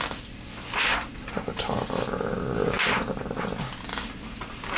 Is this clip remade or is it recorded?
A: recorded